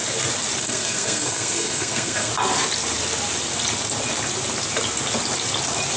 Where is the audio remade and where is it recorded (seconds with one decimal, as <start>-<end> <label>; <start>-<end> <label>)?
0.0-0.6 recorded; 0.6-2.3 remade; 2.3-6.0 recorded